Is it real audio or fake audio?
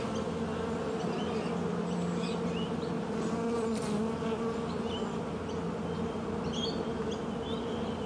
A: real